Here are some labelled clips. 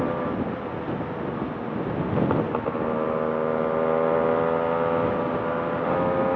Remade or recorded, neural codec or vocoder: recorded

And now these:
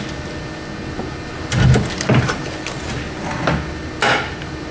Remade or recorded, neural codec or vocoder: recorded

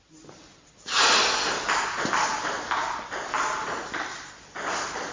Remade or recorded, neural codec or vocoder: recorded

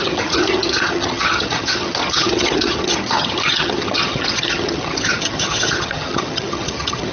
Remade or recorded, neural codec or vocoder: remade, vocoder, HiFi-GAN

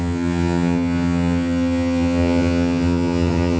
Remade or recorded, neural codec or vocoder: remade, vocoder, HiFi-GAN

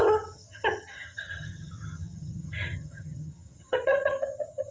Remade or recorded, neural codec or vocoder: remade, vocoder, HiFi-GAN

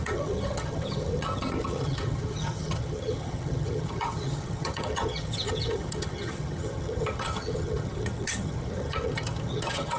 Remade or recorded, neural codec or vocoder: remade, vocoder, HiFi-GAN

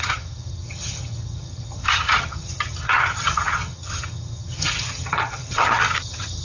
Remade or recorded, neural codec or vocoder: remade, vocoder, HiFi-GAN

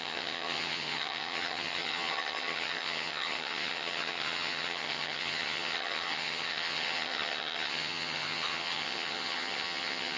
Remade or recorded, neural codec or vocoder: remade, vocoder, HiFi-GAN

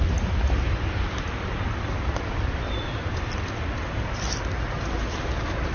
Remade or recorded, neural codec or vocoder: recorded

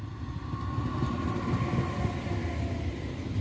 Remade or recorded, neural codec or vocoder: recorded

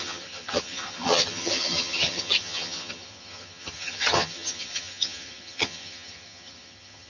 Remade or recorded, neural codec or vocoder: remade, vocoder, HiFi-GAN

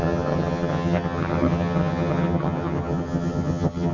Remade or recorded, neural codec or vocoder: remade, vocoder, HiFi-GAN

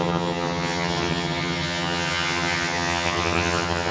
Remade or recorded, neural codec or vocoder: remade, vocoder, HiFi-GAN